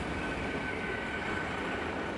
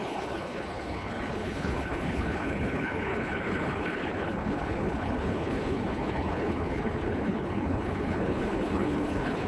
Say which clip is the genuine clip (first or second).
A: first